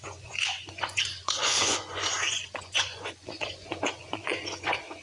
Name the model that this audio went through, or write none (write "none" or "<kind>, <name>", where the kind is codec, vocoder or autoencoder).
vocoder, Vocos